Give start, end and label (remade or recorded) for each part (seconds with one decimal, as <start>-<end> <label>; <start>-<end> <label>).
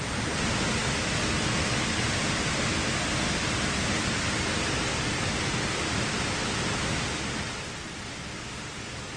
0.0-9.2 recorded